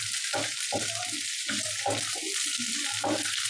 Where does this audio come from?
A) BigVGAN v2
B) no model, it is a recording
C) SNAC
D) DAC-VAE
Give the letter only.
B